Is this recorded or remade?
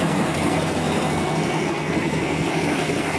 remade